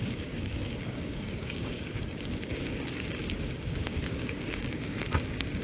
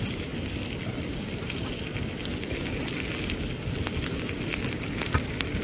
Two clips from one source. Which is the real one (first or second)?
second